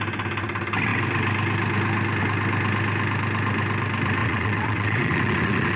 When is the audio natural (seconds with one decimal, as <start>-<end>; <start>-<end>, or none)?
0.0-4.2